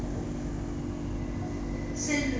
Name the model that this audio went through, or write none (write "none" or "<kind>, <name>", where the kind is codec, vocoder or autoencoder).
none